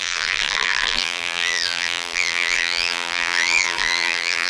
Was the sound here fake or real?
fake